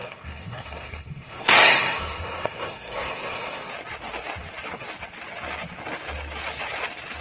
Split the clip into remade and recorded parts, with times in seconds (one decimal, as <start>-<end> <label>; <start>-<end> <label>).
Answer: 0.0-3.7 remade; 3.7-7.2 recorded

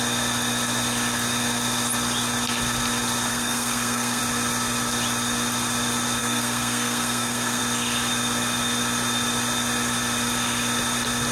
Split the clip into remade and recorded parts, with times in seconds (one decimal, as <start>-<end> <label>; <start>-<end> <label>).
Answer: 0.0-3.3 recorded; 3.3-4.2 remade; 4.2-6.2 recorded; 6.2-7.6 remade; 7.6-11.3 recorded